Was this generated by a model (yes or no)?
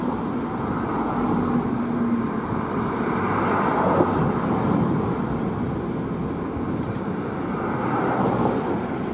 no